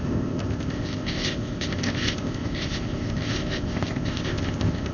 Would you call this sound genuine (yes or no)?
no